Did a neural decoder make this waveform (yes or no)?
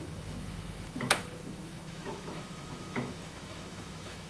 yes